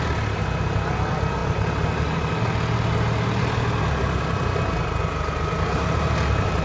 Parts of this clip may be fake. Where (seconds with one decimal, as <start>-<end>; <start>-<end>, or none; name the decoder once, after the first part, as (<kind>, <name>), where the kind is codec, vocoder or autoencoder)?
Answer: none